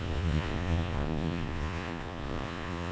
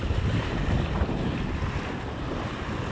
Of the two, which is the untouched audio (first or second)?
second